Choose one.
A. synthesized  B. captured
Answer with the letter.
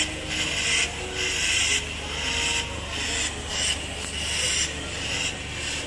B